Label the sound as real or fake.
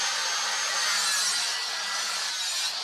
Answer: real